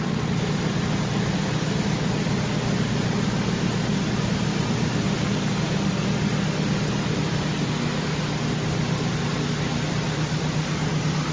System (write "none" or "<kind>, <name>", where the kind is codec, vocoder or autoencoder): none